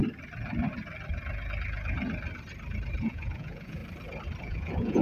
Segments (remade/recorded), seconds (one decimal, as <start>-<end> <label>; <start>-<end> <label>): 0.0-3.0 recorded; 3.0-3.8 remade; 3.8-4.4 recorded; 4.4-5.0 remade

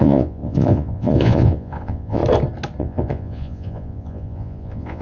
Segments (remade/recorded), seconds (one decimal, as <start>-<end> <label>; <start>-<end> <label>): 0.0-2.2 remade; 2.2-2.8 recorded; 2.8-5.0 remade

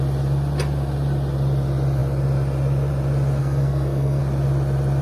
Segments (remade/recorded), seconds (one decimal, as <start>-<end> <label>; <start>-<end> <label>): 0.0-3.4 recorded; 3.4-4.2 remade; 4.2-5.0 recorded

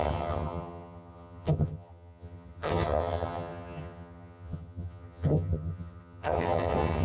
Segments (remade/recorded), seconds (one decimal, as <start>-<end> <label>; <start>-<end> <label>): 0.0-7.0 remade